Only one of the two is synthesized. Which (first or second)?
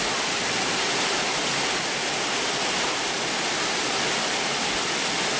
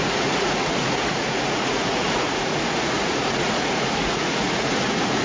second